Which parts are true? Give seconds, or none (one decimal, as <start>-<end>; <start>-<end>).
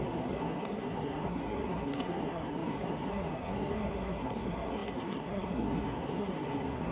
none